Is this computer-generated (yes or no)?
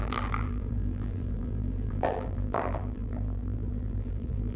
yes